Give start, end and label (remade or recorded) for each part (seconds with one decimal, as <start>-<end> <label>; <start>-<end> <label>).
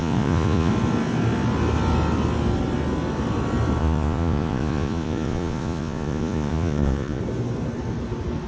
0.0-0.7 remade; 0.7-3.8 recorded; 3.8-7.2 remade; 7.2-8.5 recorded